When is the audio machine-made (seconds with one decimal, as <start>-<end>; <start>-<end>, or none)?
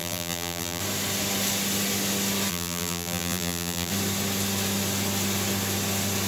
0.0-0.8; 2.5-3.9